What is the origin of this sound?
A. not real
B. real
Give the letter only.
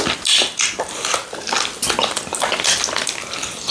B